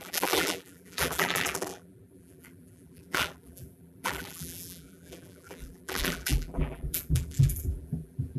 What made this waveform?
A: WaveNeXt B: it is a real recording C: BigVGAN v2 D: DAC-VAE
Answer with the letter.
C